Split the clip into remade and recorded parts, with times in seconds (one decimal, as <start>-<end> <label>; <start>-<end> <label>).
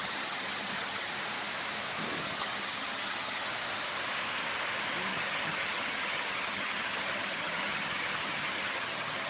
0.0-1.1 remade; 1.1-2.2 recorded; 2.2-3.5 remade; 3.5-5.1 recorded; 5.1-9.3 remade